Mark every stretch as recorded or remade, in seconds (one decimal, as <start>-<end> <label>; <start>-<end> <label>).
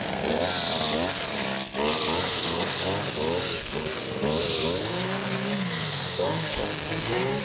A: 0.0-0.4 remade; 0.4-2.2 recorded; 2.2-2.8 remade; 2.8-3.4 recorded; 3.4-4.2 remade; 4.2-4.8 recorded; 4.8-7.4 remade